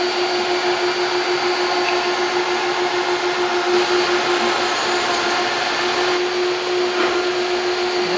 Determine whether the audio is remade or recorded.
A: recorded